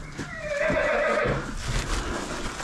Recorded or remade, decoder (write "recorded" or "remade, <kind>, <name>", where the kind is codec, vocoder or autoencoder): recorded